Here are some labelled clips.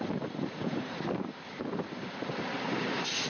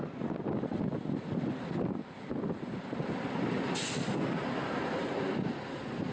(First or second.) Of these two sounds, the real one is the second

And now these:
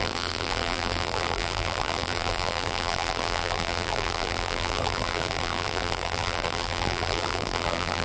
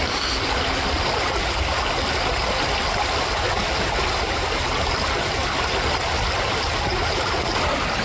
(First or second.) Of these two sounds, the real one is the second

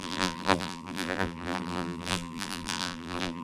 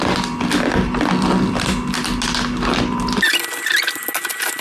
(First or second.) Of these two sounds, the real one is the second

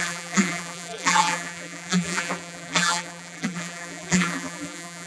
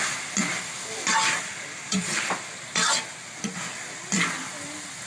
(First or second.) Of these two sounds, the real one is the second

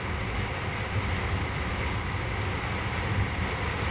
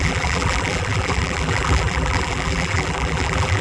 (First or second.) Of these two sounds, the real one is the first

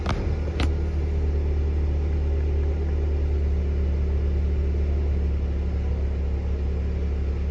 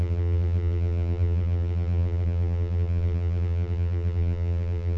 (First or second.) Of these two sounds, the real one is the first